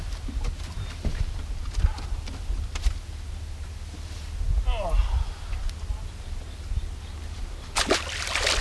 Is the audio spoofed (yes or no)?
no